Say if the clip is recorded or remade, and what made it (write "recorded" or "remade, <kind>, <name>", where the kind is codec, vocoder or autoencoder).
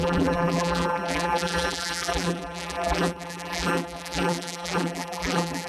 remade, vocoder, BigVGAN v2